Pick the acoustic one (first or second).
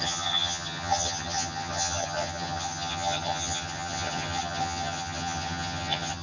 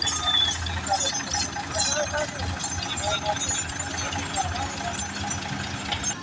second